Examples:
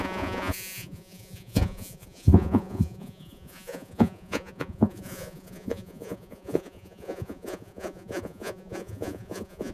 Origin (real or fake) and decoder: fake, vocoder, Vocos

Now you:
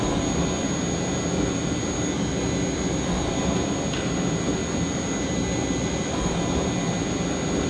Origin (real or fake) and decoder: real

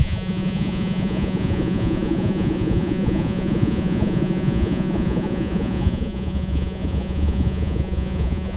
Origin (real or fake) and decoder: fake, vocoder, Vocos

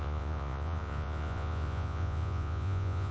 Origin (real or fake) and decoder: fake, vocoder, Vocos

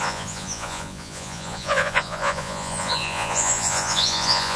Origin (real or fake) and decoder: fake, vocoder, Vocos